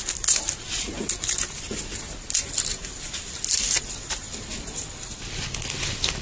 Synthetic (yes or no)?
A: no